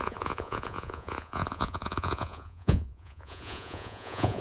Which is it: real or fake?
fake